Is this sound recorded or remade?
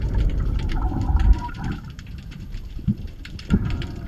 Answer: remade